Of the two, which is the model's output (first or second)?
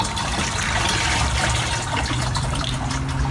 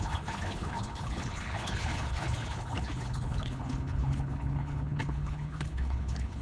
second